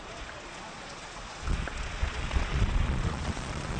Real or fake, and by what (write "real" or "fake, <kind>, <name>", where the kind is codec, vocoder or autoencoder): fake, vocoder, Vocos